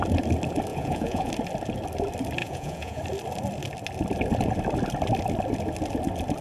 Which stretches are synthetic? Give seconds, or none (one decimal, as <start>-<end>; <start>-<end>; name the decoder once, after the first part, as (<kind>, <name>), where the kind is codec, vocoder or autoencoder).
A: 0.7-1.3 (vocoder, Vocos); 2.4-3.0